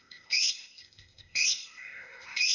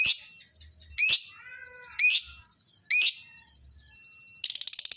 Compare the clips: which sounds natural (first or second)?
second